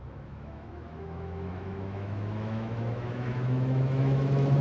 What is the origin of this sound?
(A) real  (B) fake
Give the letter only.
B